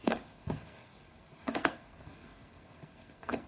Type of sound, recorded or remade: remade